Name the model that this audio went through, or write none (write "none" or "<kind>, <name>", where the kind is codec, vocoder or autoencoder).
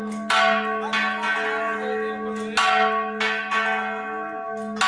none